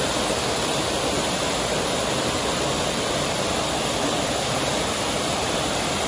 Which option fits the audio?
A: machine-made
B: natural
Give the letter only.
B